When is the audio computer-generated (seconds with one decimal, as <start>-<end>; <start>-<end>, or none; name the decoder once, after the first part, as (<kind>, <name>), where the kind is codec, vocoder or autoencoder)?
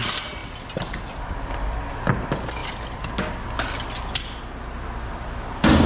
none